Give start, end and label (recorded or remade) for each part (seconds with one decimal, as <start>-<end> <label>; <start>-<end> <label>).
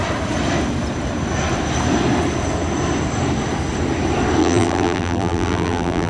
0.0-4.4 recorded; 4.4-6.1 remade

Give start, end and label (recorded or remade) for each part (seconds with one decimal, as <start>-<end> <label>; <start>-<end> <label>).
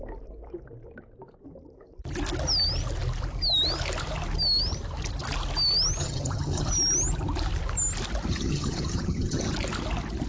0.0-6.0 recorded; 6.0-6.7 remade; 6.7-8.3 recorded; 8.3-9.5 remade; 9.5-10.3 recorded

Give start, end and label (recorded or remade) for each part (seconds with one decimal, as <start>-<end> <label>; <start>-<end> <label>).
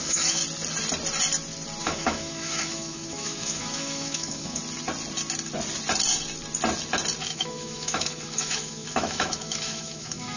0.0-0.4 remade; 0.4-1.8 recorded; 1.8-4.6 remade; 4.6-7.2 recorded; 7.2-10.4 remade